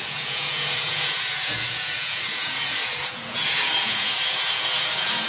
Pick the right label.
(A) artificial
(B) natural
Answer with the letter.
A